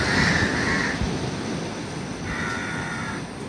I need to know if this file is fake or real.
real